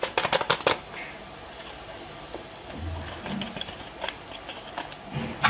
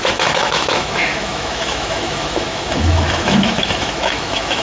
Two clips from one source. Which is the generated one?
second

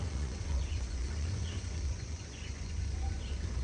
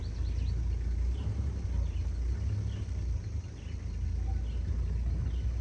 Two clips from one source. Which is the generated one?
first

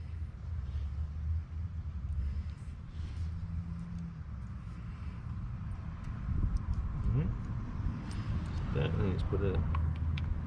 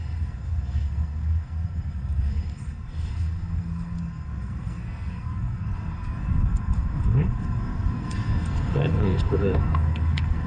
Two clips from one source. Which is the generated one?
second